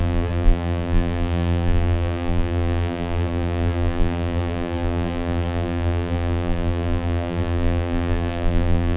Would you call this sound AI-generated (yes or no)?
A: yes